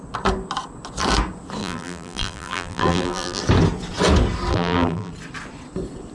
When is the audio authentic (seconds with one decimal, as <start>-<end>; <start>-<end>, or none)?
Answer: 0.0-1.6; 3.4-4.5; 5.1-6.1